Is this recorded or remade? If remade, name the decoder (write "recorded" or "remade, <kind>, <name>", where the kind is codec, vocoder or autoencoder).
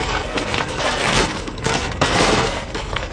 remade, codec, SNAC